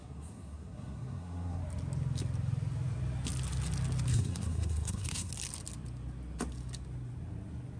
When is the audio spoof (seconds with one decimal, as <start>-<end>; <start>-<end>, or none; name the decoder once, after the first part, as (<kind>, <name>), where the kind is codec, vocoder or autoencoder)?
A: 0.0-1.6 (codec, SNAC); 4.1-5.3